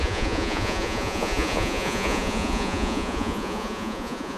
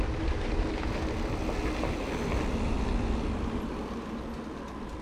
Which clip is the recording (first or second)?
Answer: second